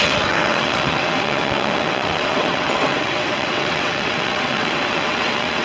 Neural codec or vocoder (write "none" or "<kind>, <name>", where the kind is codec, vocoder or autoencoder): vocoder, WaveNeXt